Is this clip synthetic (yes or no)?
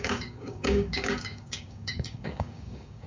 yes